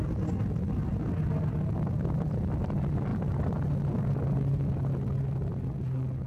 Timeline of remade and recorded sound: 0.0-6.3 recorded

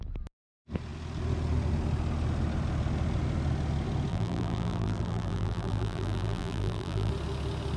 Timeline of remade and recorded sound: 0.0-4.1 recorded; 4.1-7.1 remade; 7.1-7.8 recorded

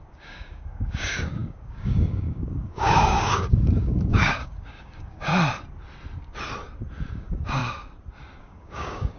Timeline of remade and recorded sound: 0.0-5.3 remade; 5.3-7.1 recorded; 7.1-7.6 remade; 7.6-8.4 recorded; 8.4-9.2 remade

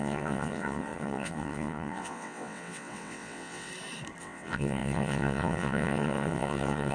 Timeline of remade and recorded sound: 0.0-3.7 remade; 3.7-4.2 recorded; 4.2-6.9 remade

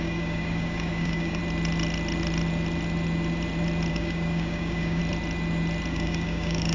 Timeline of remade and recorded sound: 0.0-1.4 remade; 1.4-3.9 recorded; 3.9-5.0 remade; 5.0-5.9 recorded; 5.9-6.7 remade

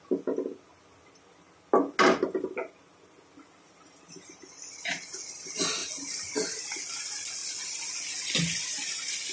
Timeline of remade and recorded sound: 0.0-9.3 recorded

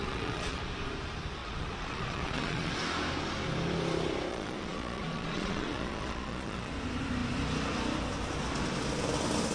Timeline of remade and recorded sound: 0.0-0.6 remade; 0.6-1.4 recorded; 1.4-2.7 remade; 2.7-4.3 recorded; 4.3-6.7 remade; 6.7-9.5 recorded

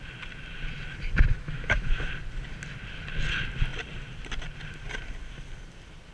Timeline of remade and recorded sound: 0.0-1.3 recorded; 1.3-2.1 remade; 2.1-6.1 recorded